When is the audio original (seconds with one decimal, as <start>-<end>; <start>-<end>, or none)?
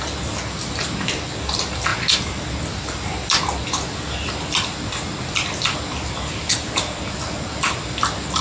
0.0-8.4